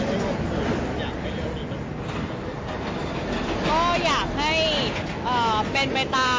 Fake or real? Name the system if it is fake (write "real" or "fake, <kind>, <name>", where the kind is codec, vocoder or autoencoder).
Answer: real